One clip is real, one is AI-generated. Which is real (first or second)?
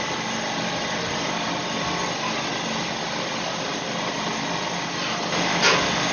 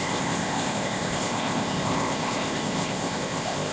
first